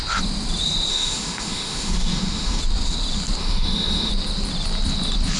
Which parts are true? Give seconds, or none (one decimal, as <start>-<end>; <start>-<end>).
0.0-0.9; 2.6-3.4; 4.1-5.4